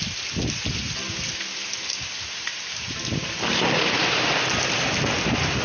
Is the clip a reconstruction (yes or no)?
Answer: no